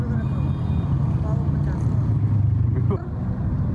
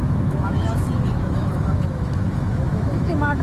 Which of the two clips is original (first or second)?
first